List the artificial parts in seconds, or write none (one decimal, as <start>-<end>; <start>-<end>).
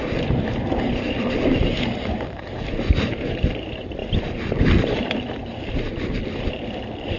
0.0-7.2